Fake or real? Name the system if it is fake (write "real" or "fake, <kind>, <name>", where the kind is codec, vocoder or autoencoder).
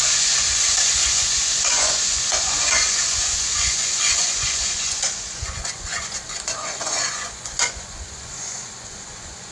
fake, vocoder, Vocos